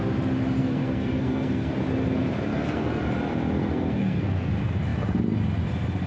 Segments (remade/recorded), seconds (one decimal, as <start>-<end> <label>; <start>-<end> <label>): 0.0-0.6 recorded; 0.6-1.7 remade; 1.7-2.5 recorded; 2.5-3.0 remade; 3.0-3.6 recorded; 3.6-4.5 remade; 4.5-6.1 recorded